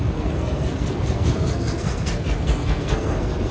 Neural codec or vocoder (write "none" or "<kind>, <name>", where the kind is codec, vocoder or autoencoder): codec, SNAC